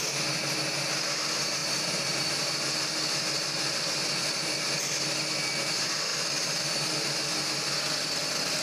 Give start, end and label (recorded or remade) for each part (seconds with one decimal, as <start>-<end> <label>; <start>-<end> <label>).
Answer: 0.0-8.6 recorded